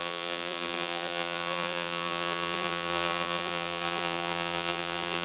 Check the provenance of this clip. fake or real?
fake